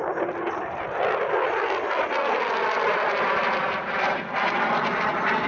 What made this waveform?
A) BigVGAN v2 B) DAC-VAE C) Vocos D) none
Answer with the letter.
D